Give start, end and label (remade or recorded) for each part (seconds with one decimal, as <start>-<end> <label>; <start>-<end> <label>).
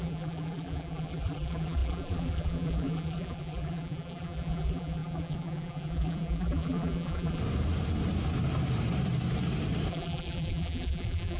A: 0.0-7.4 remade; 7.4-9.9 recorded; 9.9-11.4 remade